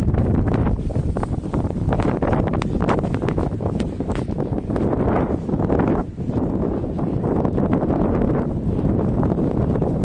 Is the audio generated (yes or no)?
no